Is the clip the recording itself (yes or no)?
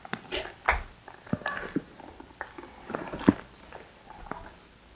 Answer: yes